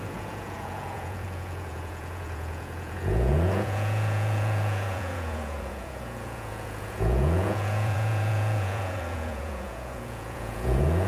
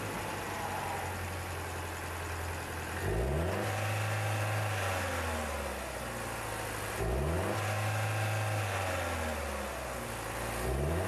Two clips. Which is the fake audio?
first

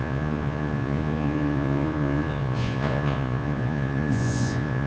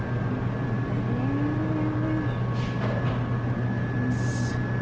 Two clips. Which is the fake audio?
first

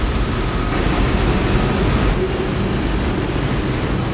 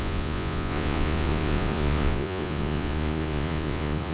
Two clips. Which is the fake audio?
second